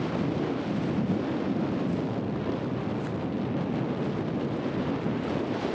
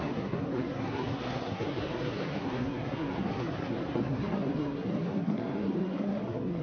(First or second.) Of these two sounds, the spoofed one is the second